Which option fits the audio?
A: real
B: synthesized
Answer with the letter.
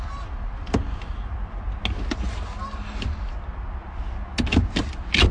A